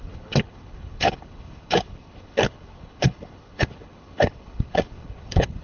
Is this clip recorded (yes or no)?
no